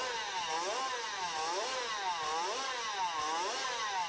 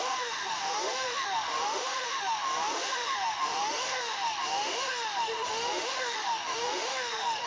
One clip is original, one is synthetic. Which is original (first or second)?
first